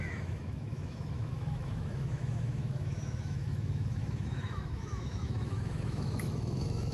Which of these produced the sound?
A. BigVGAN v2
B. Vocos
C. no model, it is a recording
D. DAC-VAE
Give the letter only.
D